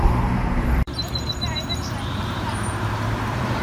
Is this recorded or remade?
remade